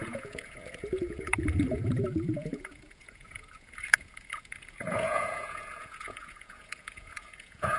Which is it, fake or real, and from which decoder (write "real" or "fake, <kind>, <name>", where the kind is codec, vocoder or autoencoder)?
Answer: fake, vocoder, Vocos